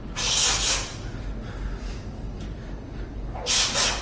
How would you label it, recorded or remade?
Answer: recorded